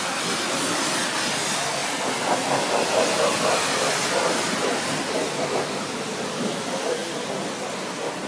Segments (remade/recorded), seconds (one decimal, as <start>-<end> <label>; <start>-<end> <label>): 0.0-8.3 recorded